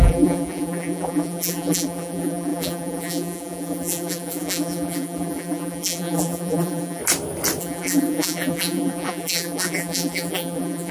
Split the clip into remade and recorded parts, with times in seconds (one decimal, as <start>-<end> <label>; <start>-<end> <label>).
0.0-7.0 remade; 7.0-7.6 recorded; 7.6-10.9 remade